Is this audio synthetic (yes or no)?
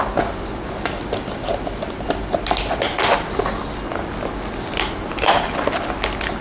no